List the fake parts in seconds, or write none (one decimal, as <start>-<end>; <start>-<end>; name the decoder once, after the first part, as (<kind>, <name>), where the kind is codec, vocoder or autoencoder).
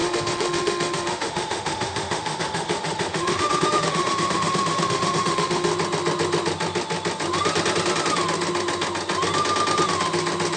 0.0-5.7 (autoencoder, DAC-VAE)